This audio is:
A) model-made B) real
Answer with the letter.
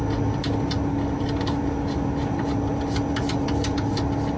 B